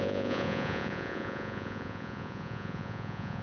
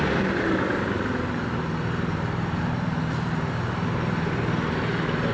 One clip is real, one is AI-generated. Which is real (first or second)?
second